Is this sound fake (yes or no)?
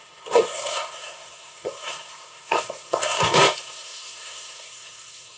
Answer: yes